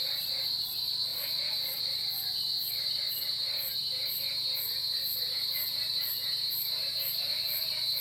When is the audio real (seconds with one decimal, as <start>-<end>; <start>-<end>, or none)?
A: 0.0-1.1; 1.8-3.8; 7.4-8.0